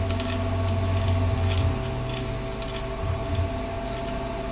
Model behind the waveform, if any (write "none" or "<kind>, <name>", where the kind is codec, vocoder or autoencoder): none